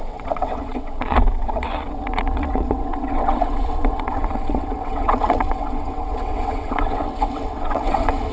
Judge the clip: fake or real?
fake